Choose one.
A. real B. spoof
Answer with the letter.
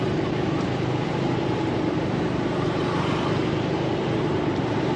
B